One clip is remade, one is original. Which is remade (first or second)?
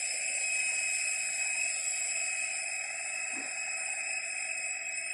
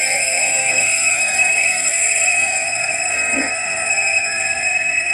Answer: second